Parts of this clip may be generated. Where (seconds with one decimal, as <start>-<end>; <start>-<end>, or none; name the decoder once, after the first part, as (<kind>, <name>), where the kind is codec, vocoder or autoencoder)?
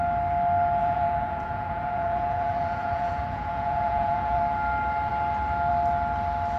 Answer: 0.8-4.4 (vocoder, Vocos)